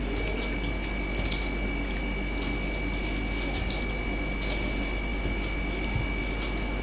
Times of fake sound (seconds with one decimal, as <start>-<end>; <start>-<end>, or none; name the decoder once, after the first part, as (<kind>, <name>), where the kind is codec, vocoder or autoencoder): none